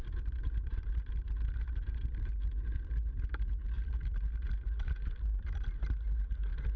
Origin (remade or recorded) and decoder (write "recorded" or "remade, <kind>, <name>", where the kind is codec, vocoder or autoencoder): remade, vocoder, BigVGAN v2